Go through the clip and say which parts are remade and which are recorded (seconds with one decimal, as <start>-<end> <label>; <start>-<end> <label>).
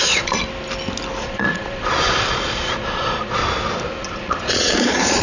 0.0-0.4 remade; 0.4-1.2 recorded; 1.2-3.4 remade; 3.4-4.0 recorded; 4.0-5.2 remade